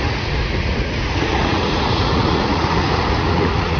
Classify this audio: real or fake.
fake